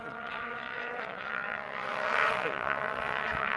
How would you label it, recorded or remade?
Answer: remade